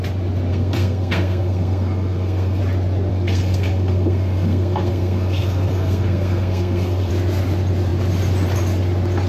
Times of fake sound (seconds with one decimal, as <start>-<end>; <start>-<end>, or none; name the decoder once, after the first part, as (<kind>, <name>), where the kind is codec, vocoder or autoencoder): 0.5-2.6 (codec, SNAC); 3.1-7.1